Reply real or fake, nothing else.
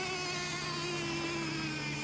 real